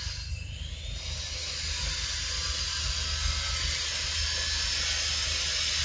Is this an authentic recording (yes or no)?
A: yes